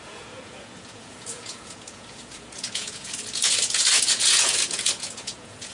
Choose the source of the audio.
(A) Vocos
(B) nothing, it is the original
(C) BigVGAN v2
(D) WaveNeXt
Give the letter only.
A